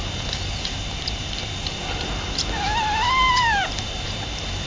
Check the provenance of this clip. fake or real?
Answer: fake